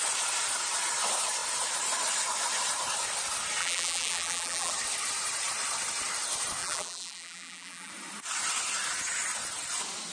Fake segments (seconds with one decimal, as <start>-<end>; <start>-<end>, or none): 3.6-4.7; 6.6-7.9